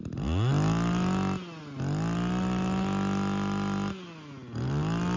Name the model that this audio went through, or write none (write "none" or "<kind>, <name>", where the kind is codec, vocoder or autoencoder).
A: none